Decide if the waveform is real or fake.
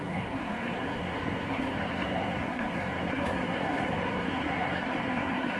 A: fake